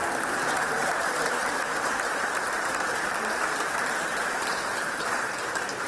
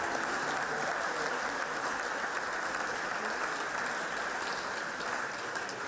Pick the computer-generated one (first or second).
first